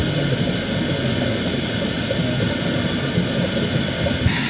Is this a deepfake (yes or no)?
no